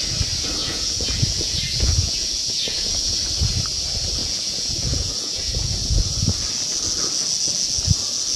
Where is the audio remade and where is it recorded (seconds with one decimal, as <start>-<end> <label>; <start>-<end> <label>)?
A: 0.0-0.6 recorded; 0.6-3.2 remade; 3.2-4.2 recorded; 4.2-6.3 remade; 6.3-8.4 recorded

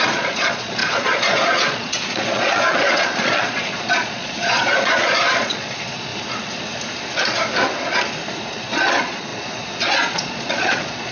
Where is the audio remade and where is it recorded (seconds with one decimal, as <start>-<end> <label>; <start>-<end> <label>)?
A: 0.0-6.1 remade; 6.1-8.4 recorded; 8.4-9.3 remade; 9.3-9.8 recorded; 9.8-11.1 remade

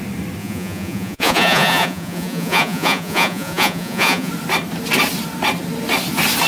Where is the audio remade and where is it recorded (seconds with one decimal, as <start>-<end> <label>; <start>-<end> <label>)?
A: 0.0-0.4 recorded; 0.4-4.3 remade; 4.3-6.5 recorded

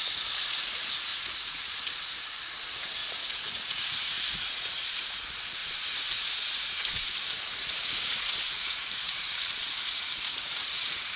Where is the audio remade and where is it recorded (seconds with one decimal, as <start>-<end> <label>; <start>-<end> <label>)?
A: 0.0-11.2 remade

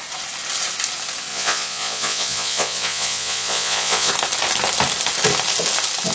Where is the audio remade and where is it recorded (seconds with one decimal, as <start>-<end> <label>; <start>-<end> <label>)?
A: 0.0-1.3 recorded; 1.3-4.1 remade; 4.1-6.1 recorded

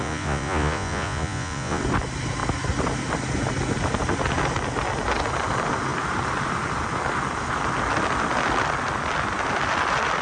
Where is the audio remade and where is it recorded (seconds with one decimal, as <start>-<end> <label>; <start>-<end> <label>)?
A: 0.0-1.8 remade; 1.8-10.2 recorded